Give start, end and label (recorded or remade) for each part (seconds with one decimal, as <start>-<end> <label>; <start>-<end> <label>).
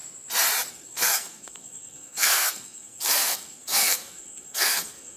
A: 0.0-0.7 recorded; 0.7-5.2 remade